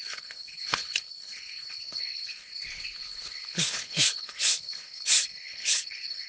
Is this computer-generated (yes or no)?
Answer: yes